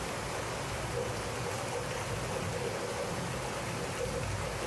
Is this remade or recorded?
recorded